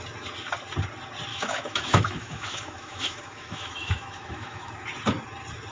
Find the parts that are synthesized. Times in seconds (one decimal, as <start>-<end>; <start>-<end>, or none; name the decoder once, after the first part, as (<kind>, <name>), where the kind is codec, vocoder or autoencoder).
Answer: 1.3-4.7 (autoencoder, DAC-VAE)